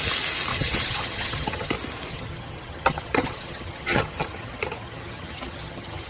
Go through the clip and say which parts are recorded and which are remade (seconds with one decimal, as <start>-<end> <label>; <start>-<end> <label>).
0.0-0.5 recorded; 0.5-1.7 remade; 1.7-2.1 recorded; 2.1-6.1 remade